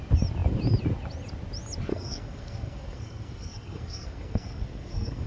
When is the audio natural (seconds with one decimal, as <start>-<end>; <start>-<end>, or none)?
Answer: 0.0-1.9